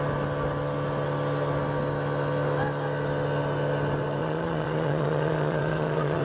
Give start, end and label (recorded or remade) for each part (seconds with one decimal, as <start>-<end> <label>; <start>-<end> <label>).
0.0-4.2 recorded; 4.2-6.2 remade

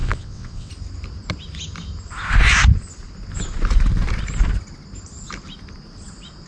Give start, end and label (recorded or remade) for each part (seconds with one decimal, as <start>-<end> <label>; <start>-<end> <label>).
0.0-0.7 remade; 0.7-6.5 recorded

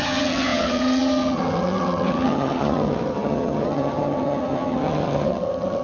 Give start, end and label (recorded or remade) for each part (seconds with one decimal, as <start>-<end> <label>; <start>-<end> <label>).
0.0-5.8 remade

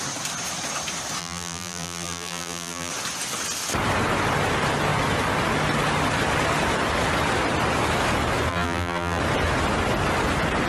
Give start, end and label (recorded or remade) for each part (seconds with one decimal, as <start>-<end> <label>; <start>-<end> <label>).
0.0-1.2 recorded; 1.2-2.9 remade; 2.9-8.5 recorded; 8.5-9.2 remade; 9.2-10.7 recorded

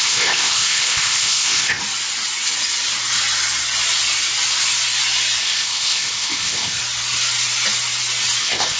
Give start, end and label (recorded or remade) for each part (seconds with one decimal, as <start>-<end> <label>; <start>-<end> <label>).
0.0-1.8 remade; 1.8-5.4 recorded; 5.4-6.8 remade; 6.8-8.4 recorded; 8.4-8.8 remade